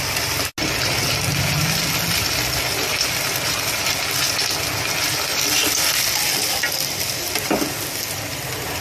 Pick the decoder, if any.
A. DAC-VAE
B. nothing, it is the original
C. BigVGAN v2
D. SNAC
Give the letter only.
B